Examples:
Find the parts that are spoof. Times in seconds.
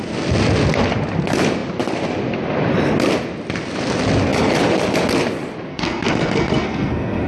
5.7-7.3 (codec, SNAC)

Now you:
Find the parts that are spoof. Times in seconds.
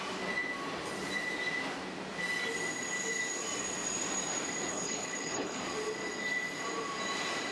4.7-5.6 (codec, HILCodec)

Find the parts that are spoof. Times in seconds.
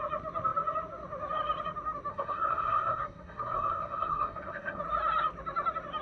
2.1-4.8 (codec, SNAC)